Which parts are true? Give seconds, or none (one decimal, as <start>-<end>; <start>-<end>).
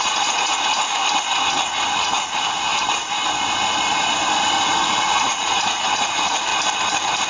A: 1.0-1.5; 2.7-4.6; 6.5-7.3